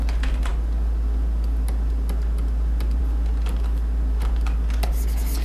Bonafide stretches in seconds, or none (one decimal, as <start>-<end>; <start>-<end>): 0.0-5.4